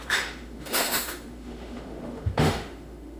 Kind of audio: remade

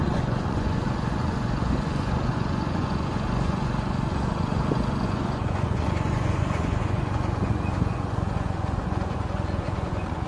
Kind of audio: remade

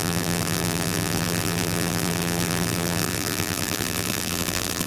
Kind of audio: remade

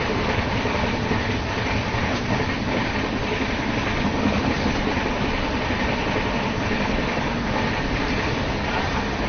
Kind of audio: recorded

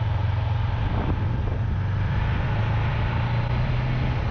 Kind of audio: recorded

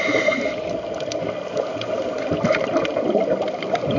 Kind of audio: recorded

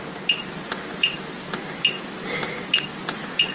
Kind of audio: recorded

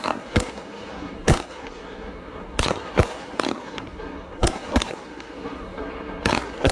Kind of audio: remade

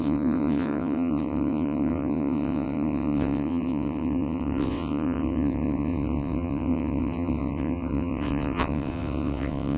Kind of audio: remade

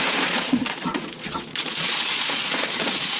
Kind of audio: remade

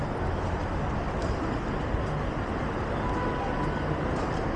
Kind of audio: recorded